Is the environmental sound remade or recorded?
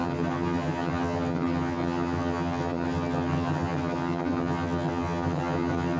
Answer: remade